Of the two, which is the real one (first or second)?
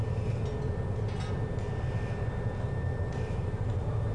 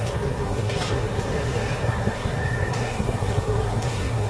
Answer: first